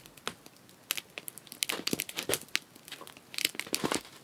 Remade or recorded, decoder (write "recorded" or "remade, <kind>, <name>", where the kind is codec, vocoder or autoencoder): recorded